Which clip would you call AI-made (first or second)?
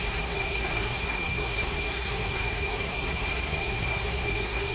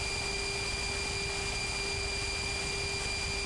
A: first